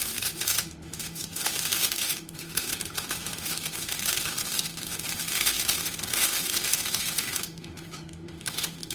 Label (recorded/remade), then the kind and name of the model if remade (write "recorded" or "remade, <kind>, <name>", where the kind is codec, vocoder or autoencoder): remade, autoencoder, DAC-VAE